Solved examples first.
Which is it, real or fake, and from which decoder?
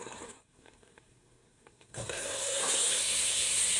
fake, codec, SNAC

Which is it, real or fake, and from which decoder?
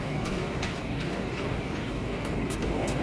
fake, codec, DAC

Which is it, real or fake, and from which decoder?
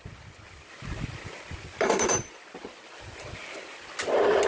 real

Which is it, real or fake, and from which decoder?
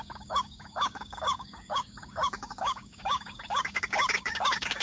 fake, codec, DAC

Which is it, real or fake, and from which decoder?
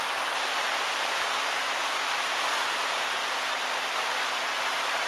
fake, vocoder, BigVGAN v2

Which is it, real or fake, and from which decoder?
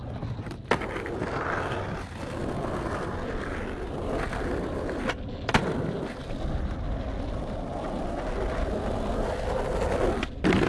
real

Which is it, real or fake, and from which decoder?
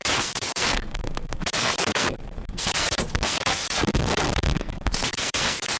fake, codec, SNAC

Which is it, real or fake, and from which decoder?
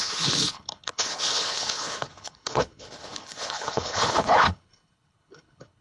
fake, codec, HILCodec